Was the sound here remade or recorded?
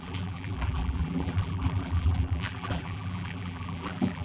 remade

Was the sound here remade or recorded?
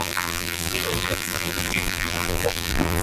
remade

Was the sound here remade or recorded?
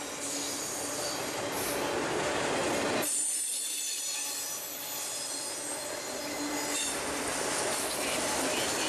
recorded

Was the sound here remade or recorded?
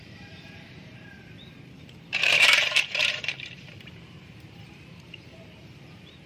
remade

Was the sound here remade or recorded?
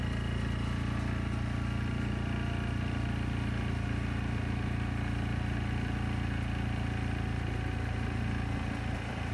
recorded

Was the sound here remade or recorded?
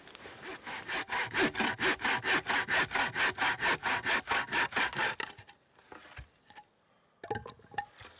recorded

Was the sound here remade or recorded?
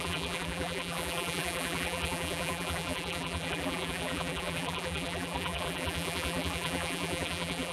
remade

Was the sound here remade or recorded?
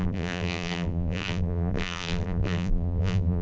remade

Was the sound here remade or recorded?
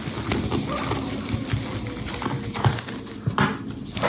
recorded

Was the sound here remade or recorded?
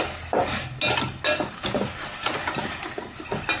recorded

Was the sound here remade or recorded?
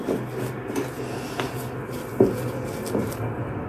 recorded